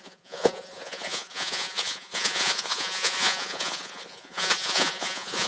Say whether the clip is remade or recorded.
remade